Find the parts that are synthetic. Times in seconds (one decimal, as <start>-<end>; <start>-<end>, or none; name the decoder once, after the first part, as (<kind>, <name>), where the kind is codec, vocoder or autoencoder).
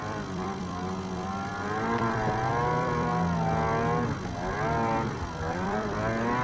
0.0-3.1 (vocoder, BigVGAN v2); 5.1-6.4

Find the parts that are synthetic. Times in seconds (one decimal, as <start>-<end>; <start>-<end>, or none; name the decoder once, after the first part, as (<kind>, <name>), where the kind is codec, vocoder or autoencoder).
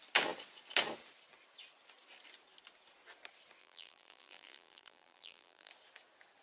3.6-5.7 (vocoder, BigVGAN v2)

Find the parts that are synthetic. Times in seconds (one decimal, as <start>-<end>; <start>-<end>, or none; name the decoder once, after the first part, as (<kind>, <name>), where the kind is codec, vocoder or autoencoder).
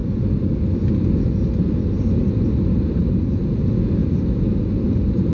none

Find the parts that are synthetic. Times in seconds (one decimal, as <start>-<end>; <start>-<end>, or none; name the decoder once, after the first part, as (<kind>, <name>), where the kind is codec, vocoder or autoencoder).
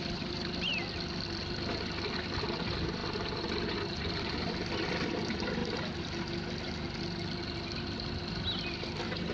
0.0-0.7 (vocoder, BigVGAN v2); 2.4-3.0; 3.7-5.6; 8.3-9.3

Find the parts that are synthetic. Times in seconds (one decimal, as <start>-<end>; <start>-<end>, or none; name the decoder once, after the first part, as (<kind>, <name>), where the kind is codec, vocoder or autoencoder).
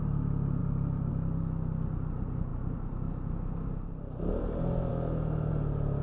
0.6-1.1 (vocoder, BigVGAN v2); 2.5-4.2